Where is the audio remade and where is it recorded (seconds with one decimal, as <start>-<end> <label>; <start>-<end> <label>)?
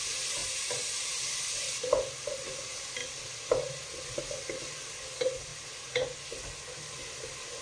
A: 0.0-7.6 recorded